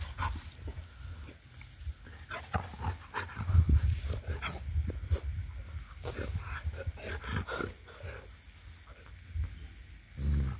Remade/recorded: recorded